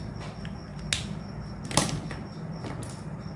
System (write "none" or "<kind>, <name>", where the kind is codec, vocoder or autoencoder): none